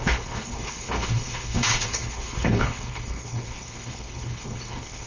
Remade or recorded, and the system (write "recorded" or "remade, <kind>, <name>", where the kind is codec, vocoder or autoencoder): remade, codec, HILCodec